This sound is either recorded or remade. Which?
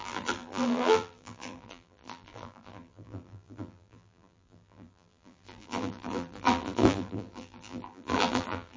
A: remade